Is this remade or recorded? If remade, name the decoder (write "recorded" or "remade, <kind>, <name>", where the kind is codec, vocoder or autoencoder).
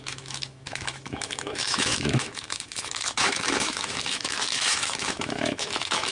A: remade, autoencoder, DAC-VAE